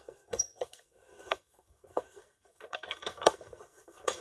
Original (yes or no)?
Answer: no